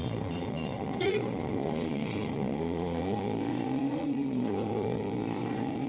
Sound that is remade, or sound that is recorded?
remade